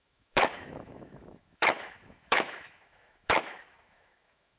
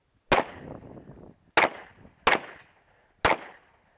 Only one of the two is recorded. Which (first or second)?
second